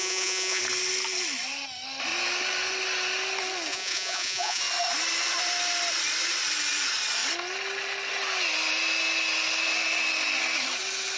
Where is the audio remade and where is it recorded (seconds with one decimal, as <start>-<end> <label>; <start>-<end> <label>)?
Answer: 0.0-0.6 remade; 0.6-3.7 recorded; 3.7-4.6 remade; 4.6-11.2 recorded